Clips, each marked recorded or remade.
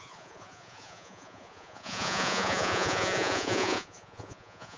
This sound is remade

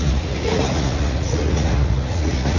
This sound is remade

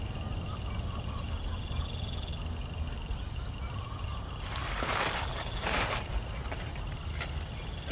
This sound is recorded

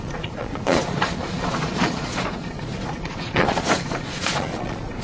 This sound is remade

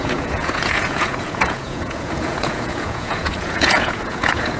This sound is remade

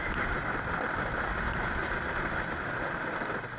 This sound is recorded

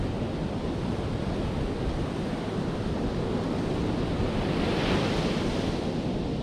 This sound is recorded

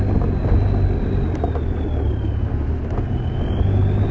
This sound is recorded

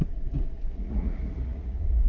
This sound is remade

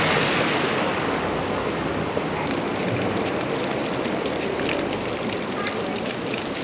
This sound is recorded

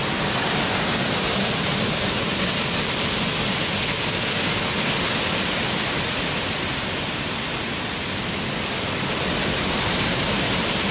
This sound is recorded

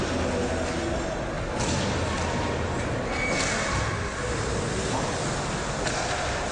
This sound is recorded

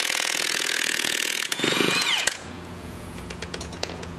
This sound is remade